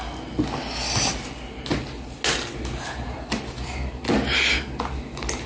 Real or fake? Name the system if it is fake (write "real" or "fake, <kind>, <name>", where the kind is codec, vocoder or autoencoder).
real